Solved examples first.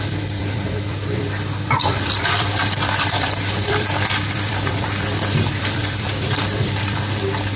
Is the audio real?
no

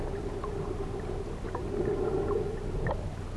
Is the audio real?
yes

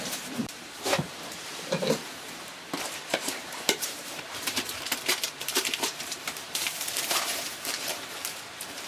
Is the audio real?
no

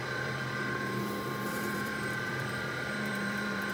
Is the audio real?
no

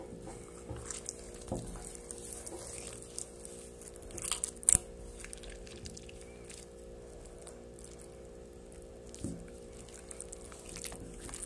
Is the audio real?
yes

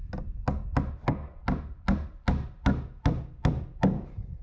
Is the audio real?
yes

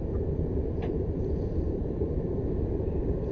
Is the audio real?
no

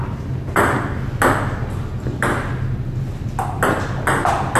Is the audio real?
yes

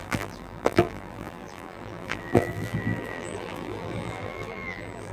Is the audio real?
no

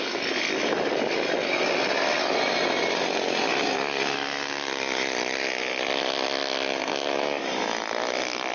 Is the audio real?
yes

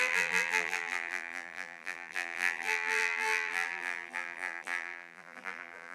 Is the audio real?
no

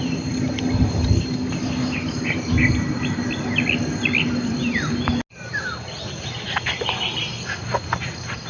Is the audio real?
yes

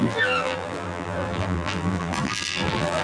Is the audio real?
no